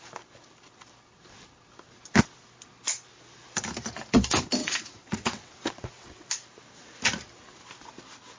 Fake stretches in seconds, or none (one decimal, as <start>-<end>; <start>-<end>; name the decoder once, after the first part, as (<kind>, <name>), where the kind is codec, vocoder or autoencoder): 4.6-6.3 (vocoder, WaveNeXt)